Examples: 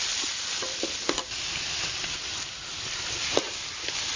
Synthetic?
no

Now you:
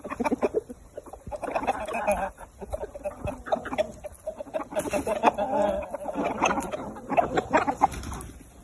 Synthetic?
no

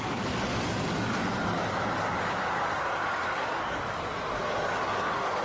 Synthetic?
yes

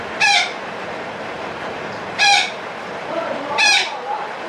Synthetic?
yes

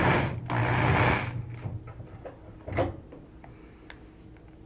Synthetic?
no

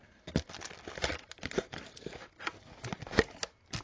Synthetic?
no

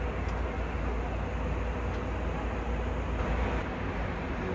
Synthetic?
no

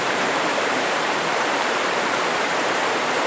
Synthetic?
yes